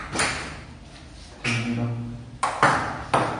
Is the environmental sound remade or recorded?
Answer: recorded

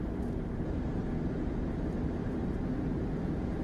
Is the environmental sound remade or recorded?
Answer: recorded